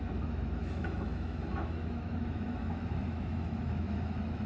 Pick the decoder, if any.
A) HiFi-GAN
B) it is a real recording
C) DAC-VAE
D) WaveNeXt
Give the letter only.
C